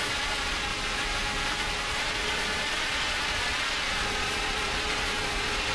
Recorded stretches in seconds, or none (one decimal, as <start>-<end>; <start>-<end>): 0.7-1.9